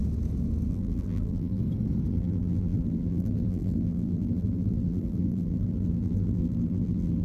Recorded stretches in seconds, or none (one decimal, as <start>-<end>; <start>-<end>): 0.0-0.7; 1.6-2.1